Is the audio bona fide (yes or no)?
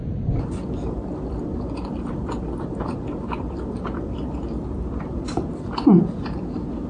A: no